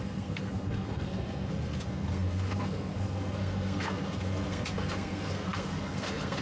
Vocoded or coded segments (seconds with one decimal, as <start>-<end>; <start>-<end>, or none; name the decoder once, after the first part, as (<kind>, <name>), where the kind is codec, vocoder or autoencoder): 0.0-6.4 (codec, SNAC)